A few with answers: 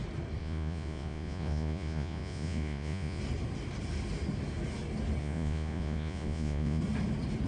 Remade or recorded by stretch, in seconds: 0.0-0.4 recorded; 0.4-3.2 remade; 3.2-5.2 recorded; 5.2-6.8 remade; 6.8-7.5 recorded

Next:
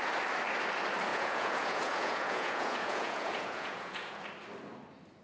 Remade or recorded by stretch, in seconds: 0.0-1.1 recorded; 1.1-4.2 remade; 4.2-5.2 recorded

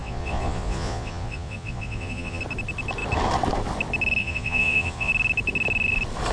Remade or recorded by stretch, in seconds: 0.0-2.4 remade; 2.4-4.2 recorded; 4.2-5.1 remade; 5.1-6.3 recorded